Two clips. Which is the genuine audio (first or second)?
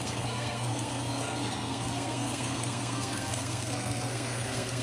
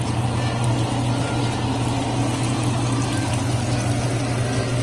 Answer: second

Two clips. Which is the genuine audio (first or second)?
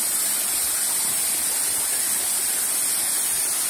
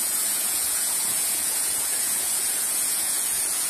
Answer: first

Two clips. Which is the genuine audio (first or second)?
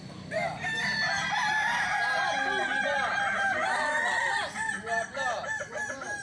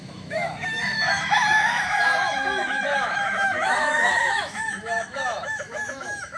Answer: first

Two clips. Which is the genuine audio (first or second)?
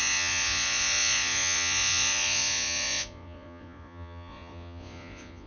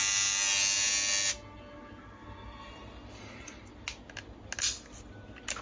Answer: second